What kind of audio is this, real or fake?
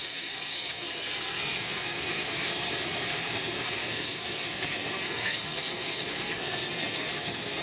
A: fake